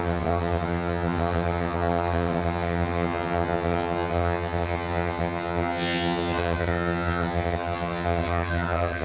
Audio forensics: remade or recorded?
remade